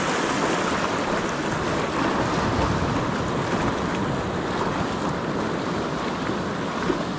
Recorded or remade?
recorded